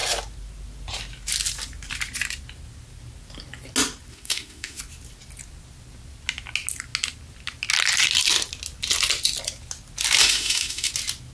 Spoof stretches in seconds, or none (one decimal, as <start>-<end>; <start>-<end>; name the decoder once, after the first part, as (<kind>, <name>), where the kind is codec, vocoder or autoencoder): 4.1-4.8 (autoencoder, DAC-VAE); 10.2-10.9